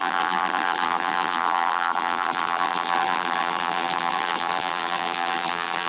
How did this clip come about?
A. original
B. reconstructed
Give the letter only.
B